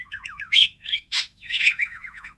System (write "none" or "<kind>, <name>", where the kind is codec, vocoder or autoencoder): autoencoder, DAC-VAE